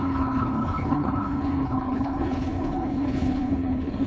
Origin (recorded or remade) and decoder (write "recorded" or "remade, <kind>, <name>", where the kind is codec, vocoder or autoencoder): remade, codec, HILCodec